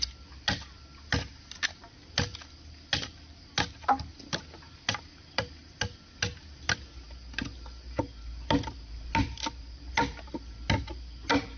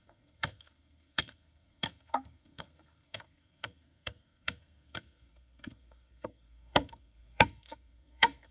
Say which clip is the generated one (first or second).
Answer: second